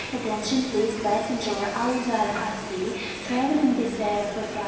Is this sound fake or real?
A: real